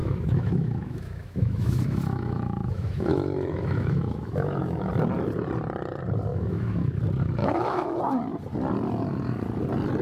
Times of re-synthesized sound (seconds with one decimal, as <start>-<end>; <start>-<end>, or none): 0.0-4.9; 6.3-7.0; 7.4-8.0